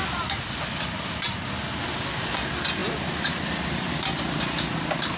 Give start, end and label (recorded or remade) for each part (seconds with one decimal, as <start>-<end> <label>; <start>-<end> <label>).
0.0-2.8 recorded; 2.8-4.2 remade; 4.2-5.2 recorded